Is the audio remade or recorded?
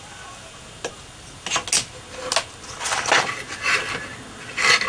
recorded